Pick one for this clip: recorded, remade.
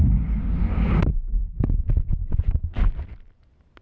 recorded